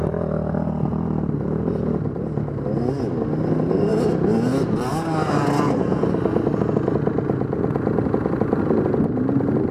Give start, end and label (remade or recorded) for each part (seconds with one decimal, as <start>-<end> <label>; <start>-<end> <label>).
0.0-9.7 recorded